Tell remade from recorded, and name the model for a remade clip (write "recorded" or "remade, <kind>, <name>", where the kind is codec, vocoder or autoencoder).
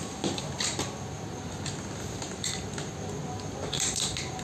recorded